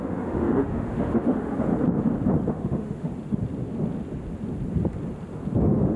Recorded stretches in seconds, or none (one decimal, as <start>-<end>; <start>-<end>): 1.7-2.5; 3.1-5.6